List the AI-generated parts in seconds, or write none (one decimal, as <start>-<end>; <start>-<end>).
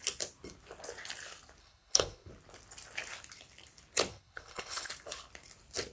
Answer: 1.6-2.3; 4.1-4.9